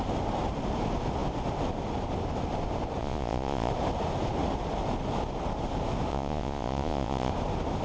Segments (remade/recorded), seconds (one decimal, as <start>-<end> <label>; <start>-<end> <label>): 0.0-3.0 recorded; 3.0-3.7 remade; 3.7-6.1 recorded; 6.1-7.3 remade; 7.3-7.8 recorded